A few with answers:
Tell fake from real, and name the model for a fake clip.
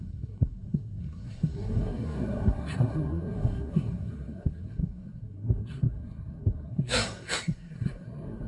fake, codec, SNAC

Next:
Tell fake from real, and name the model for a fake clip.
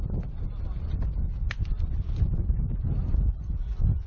real